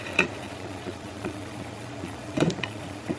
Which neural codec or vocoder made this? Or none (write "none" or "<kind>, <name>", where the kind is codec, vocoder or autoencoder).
vocoder, Vocos